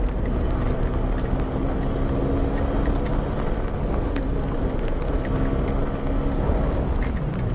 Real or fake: real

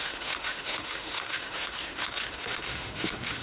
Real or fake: fake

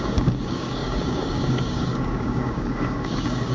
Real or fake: fake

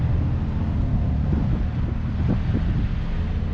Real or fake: real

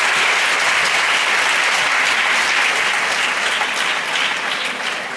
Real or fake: real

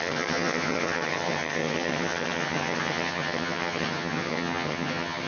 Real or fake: fake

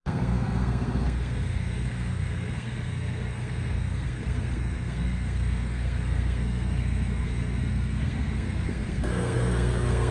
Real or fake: fake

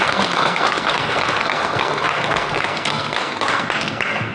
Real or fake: fake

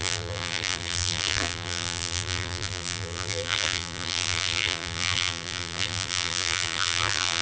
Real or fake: fake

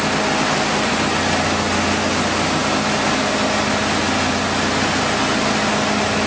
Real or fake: real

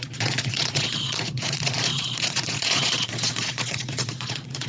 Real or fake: fake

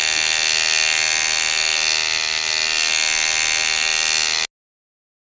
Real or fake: real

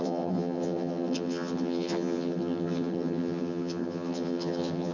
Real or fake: fake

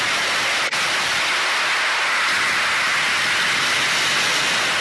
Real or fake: real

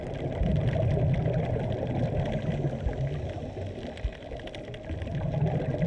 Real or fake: real